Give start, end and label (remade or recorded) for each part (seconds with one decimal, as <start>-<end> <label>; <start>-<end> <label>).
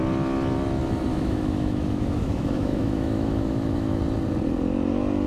0.0-1.1 recorded; 1.1-4.0 remade; 4.0-5.3 recorded